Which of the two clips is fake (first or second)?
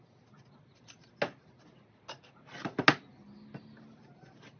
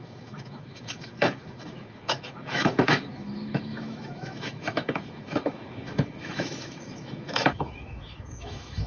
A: second